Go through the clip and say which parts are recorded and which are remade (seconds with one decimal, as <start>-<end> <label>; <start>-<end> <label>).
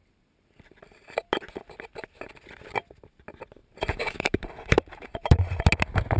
0.0-3.6 recorded; 3.6-5.4 remade; 5.4-6.2 recorded